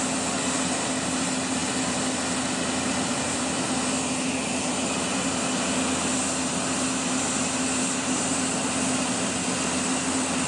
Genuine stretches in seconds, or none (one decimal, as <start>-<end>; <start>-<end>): 0.0-10.5